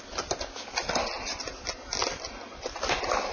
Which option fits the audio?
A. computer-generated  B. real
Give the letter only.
B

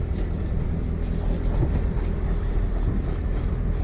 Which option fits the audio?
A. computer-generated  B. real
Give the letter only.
B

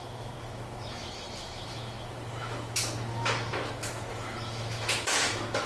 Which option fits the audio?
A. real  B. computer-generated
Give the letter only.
B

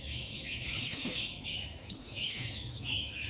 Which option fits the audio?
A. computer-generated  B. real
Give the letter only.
A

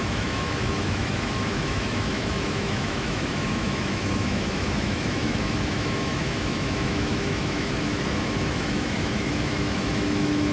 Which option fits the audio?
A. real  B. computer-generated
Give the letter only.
B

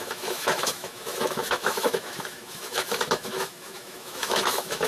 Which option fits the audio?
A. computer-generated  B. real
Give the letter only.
A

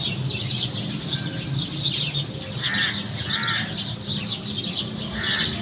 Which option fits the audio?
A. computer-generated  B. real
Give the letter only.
B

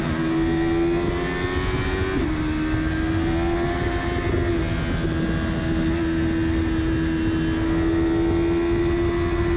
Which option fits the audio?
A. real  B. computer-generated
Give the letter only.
A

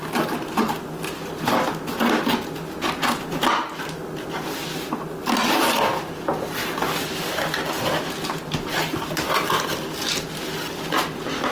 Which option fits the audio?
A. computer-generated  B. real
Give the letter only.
B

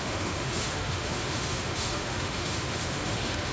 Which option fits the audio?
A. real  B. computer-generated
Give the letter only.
B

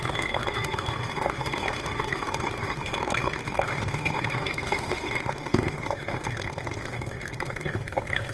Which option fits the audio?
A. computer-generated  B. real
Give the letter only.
A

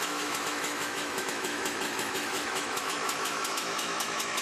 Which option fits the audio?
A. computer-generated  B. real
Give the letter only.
A